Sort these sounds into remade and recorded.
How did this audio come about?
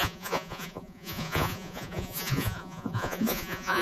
remade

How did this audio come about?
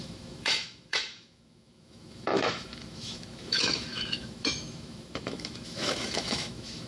remade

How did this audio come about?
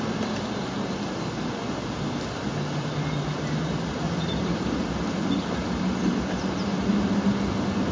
recorded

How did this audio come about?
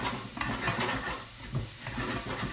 recorded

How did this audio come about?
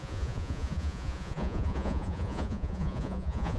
remade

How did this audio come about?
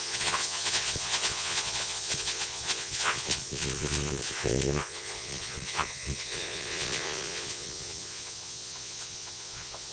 remade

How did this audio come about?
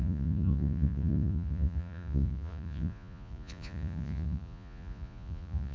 remade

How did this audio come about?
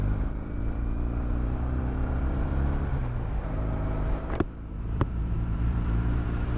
remade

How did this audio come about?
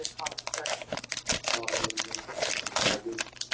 recorded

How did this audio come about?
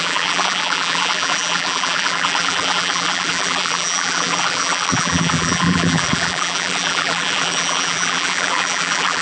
remade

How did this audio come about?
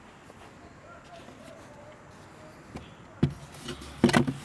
recorded